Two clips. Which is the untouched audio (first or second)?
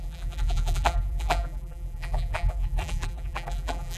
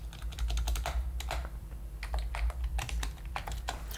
second